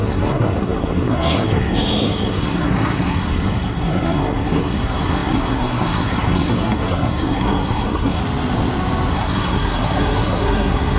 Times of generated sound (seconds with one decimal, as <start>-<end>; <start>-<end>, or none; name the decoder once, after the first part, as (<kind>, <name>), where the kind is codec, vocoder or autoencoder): 0.0-8.2 (codec, SNAC); 9.1-11.0